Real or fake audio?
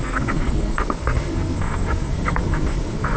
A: fake